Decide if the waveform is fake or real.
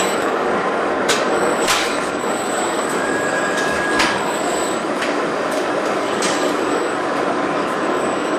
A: fake